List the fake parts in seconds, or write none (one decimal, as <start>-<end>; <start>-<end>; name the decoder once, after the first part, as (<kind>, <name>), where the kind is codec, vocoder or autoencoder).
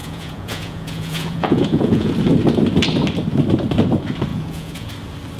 0.0-2.1 (vocoder, Vocos); 4.3-4.9